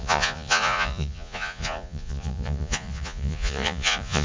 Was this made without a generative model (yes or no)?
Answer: no